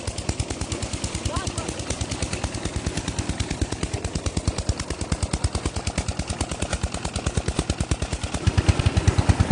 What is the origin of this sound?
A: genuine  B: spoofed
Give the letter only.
A